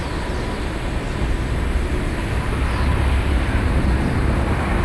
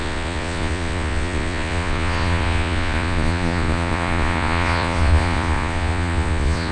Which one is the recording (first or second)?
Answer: first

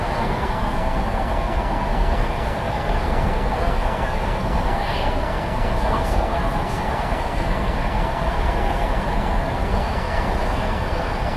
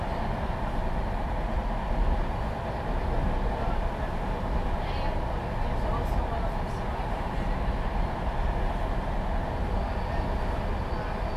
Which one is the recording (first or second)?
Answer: second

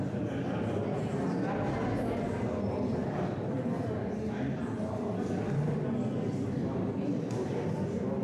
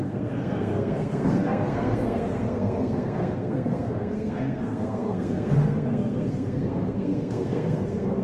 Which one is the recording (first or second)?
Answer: first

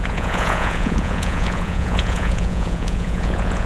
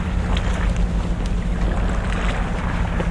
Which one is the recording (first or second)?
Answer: second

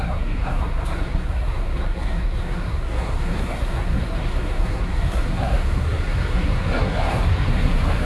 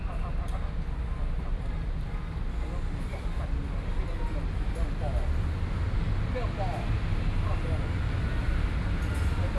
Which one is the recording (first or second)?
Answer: second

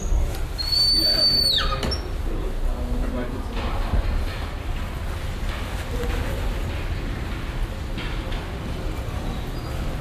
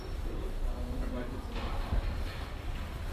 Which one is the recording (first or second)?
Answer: first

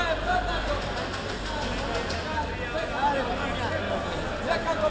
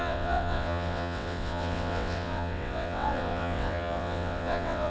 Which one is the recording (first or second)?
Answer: first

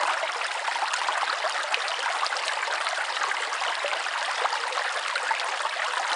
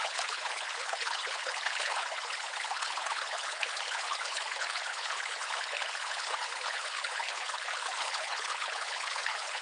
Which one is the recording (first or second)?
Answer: first